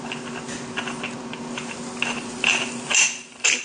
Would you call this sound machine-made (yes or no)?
no